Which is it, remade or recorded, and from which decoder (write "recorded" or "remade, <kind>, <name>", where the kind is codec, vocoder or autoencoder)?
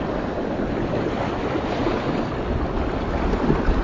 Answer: recorded